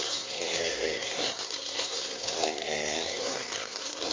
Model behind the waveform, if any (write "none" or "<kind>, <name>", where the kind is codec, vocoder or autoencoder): codec, SNAC